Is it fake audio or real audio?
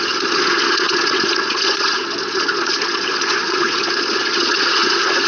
fake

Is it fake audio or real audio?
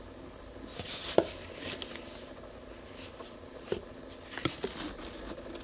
real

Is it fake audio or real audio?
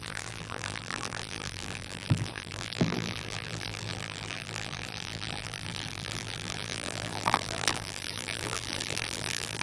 fake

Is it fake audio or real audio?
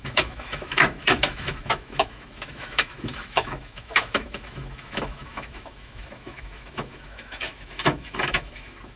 fake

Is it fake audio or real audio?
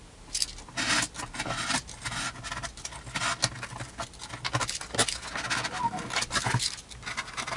real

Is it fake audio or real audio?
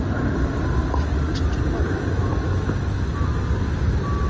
real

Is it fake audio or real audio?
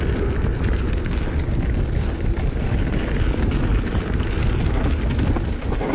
real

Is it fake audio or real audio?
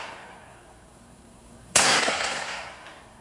fake